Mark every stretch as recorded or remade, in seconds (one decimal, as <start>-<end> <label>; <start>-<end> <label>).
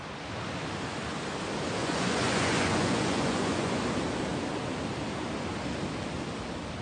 0.0-1.8 recorded; 1.8-3.8 remade; 3.8-6.8 recorded